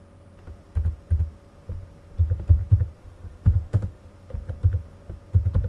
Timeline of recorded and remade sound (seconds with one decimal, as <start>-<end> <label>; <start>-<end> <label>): 0.0-3.0 recorded; 3.0-4.0 remade; 4.0-5.7 recorded